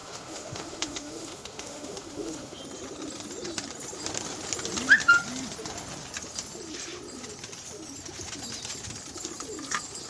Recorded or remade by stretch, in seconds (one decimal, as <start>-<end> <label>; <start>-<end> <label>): 0.0-2.6 remade; 2.6-10.1 recorded